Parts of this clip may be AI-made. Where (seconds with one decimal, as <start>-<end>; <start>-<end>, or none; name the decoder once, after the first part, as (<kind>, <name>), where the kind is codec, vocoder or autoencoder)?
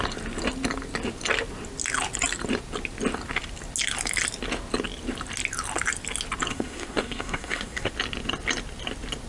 6.5-7.9 (codec, SNAC)